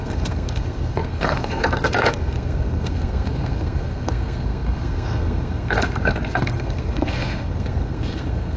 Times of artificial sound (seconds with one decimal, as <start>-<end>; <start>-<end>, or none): 0.0-8.6